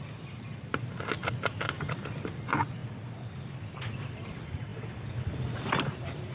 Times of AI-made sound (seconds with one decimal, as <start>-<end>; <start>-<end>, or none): none